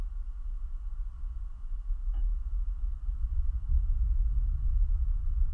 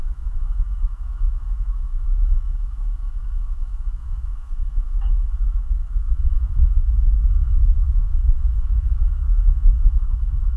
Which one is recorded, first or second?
first